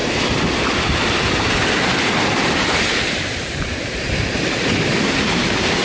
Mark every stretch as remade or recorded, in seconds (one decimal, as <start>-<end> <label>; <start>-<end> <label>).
0.0-3.0 recorded; 3.0-5.8 remade